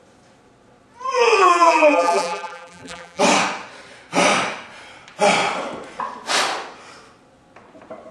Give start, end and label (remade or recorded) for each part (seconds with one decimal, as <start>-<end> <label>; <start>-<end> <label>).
0.0-1.4 recorded; 1.4-3.2 remade; 3.2-8.1 recorded